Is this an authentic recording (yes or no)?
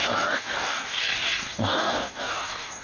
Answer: no